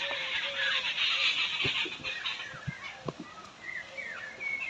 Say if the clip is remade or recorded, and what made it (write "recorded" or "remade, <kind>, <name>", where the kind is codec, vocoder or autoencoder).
recorded